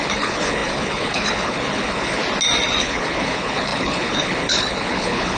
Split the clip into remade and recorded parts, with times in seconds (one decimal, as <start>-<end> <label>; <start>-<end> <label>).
0.0-2.2 remade; 2.2-2.8 recorded; 2.8-5.4 remade